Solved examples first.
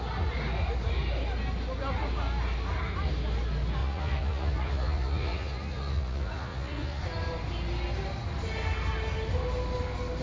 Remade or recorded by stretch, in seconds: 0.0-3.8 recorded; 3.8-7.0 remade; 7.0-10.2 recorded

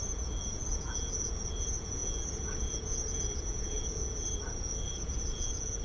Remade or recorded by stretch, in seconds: 0.0-5.8 remade

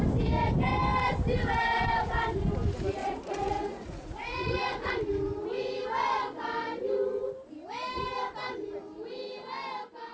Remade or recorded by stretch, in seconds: 0.0-3.0 recorded; 3.0-4.9 remade; 4.9-10.1 recorded

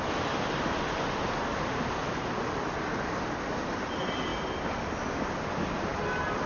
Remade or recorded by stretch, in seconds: 0.0-6.5 recorded

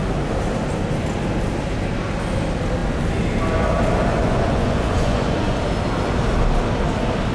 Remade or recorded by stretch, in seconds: 0.0-4.1 recorded; 4.1-5.6 remade; 5.6-7.3 recorded

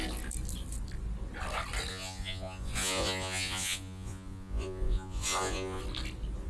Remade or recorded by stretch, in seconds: 0.0-1.9 recorded; 1.9-5.8 remade; 5.8-6.5 recorded

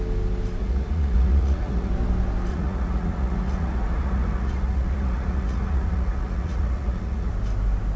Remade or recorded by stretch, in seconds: 0.0-0.6 recorded; 0.6-1.9 remade; 1.9-2.5 recorded; 2.5-7.3 remade; 7.3-8.0 recorded